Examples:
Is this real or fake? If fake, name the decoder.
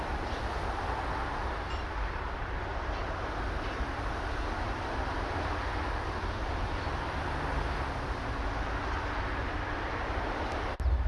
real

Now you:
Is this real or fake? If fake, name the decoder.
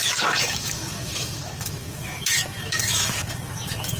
fake, autoencoder, DAC-VAE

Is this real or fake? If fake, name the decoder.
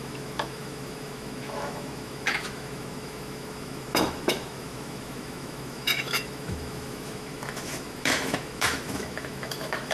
fake, autoencoder, DAC-VAE